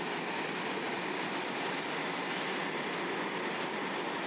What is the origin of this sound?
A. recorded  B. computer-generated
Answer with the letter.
A